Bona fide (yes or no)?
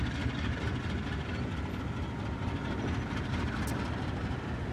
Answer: yes